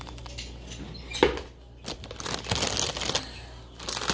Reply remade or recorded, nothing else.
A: recorded